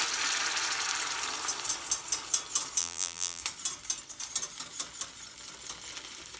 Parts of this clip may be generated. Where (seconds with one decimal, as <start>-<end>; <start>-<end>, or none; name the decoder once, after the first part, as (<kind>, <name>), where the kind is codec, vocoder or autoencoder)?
2.8-3.4 (vocoder, BigVGAN v2)